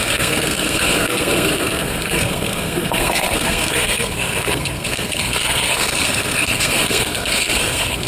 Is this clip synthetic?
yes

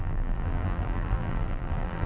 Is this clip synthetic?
yes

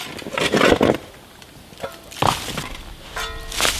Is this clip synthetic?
no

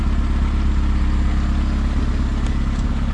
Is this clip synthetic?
no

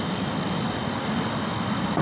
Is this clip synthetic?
no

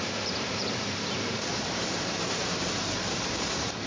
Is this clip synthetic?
yes